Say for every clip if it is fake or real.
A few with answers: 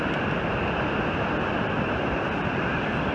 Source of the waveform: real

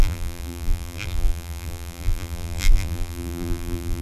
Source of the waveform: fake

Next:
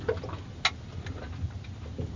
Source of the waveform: real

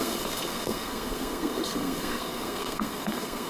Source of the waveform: fake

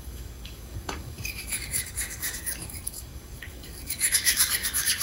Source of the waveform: fake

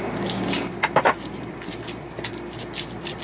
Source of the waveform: real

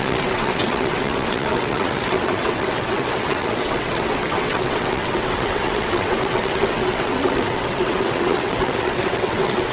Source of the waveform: fake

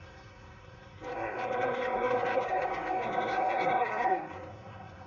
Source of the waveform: fake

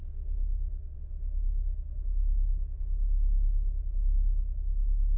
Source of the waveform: real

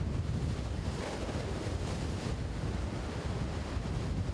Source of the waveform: real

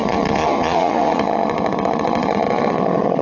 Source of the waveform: fake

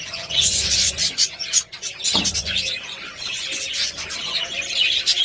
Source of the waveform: fake